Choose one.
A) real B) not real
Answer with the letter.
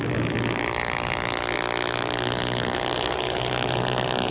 A